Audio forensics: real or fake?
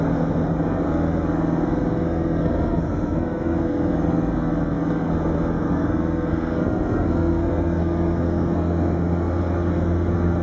fake